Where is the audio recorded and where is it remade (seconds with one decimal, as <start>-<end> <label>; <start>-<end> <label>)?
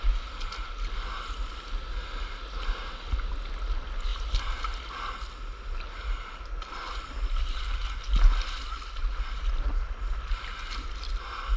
0.0-11.6 recorded